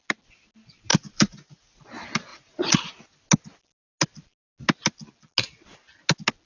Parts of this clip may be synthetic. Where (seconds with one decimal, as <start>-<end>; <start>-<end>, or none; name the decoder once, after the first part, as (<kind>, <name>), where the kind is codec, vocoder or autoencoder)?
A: 0.9-1.8 (vocoder, Vocos); 2.3-3.0